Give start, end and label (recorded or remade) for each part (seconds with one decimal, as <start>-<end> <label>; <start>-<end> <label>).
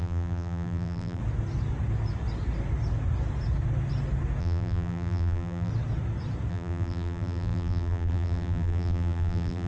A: 0.0-1.2 remade; 1.2-4.4 recorded; 4.4-5.7 remade; 5.7-6.5 recorded; 6.5-9.7 remade